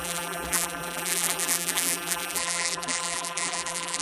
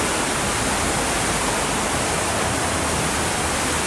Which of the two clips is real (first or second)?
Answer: second